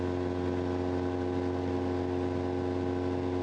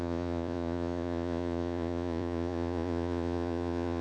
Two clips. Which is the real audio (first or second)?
first